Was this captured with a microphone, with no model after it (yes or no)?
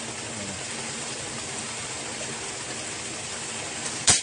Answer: no